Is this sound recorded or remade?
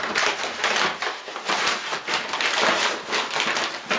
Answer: recorded